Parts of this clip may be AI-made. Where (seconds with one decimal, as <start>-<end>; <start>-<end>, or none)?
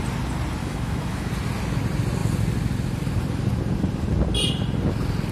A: 0.6-1.3